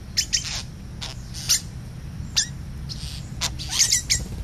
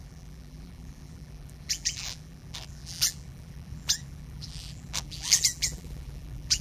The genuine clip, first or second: first